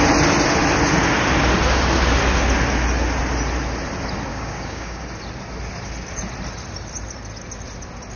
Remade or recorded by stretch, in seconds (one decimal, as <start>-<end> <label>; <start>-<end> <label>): 0.0-4.3 recorded; 4.3-5.0 remade; 5.0-8.2 recorded